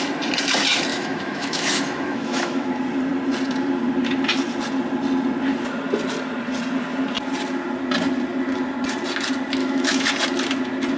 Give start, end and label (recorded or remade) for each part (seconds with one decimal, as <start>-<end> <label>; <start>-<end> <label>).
0.0-0.9 recorded; 0.9-2.7 remade; 2.7-9.6 recorded; 9.6-10.1 remade; 10.1-11.0 recorded